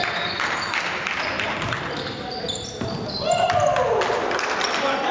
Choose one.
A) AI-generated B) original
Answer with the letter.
B